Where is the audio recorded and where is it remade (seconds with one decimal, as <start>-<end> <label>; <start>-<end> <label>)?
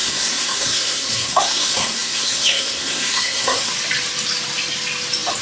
0.0-3.7 remade; 3.7-5.4 recorded